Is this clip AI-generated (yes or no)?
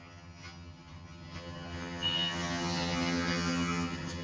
yes